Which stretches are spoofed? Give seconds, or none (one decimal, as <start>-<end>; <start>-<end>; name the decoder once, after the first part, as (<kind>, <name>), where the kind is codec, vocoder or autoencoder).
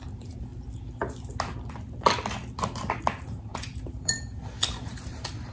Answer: 0.0-0.5 (vocoder, BigVGAN v2); 3.0-5.5